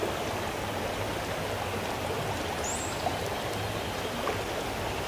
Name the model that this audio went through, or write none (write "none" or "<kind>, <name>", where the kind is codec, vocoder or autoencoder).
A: none